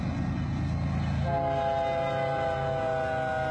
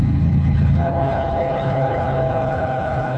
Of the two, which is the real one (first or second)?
first